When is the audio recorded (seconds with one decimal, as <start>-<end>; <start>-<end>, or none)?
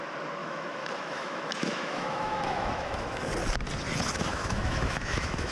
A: 0.0-0.4; 3.3-4.3